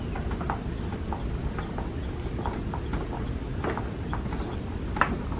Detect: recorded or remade recorded